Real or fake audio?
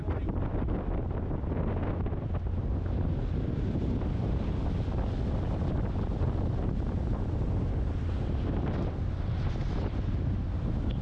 real